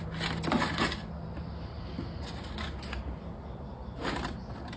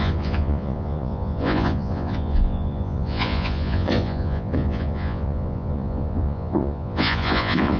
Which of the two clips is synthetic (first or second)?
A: second